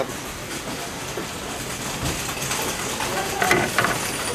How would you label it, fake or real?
fake